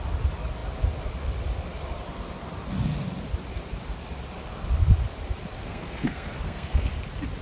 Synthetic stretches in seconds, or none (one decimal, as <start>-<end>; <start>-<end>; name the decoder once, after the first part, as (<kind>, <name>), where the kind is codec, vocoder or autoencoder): 5.6-6.9 (codec, SNAC)